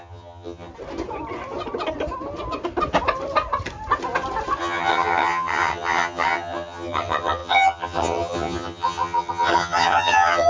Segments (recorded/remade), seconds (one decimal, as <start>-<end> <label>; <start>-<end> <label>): 0.0-0.7 remade; 0.7-4.6 recorded; 4.6-10.5 remade